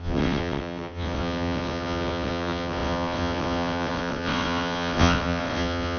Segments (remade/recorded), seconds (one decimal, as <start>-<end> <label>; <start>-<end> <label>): 0.0-6.0 remade